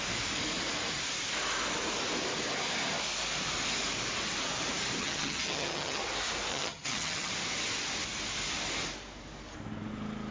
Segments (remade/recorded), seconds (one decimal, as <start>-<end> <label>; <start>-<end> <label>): 0.0-5.0 recorded; 5.0-6.0 remade; 6.0-6.5 recorded; 6.5-7.3 remade; 7.3-10.3 recorded